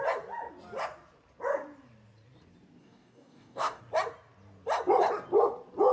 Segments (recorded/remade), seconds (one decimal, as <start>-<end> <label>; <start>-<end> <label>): 0.0-2.8 recorded; 2.8-3.8 remade; 3.8-5.9 recorded